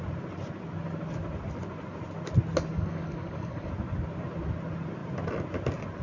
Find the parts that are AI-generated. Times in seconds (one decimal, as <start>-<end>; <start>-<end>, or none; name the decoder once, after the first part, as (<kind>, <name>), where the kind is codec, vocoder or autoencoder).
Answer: 2.7-3.7 (codec, DAC)